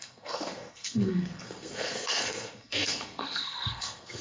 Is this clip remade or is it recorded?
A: remade